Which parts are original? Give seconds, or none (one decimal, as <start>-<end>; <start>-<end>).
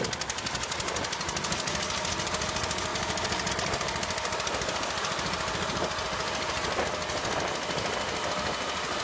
0.0-9.0